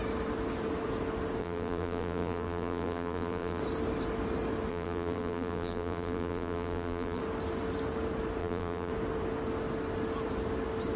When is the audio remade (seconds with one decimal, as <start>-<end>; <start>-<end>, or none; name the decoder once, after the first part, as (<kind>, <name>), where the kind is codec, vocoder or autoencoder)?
1.4-3.6 (vocoder, BigVGAN v2); 4.7-7.2; 8.4-8.9